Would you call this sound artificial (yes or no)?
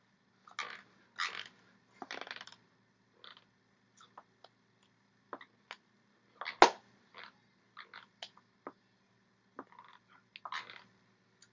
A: no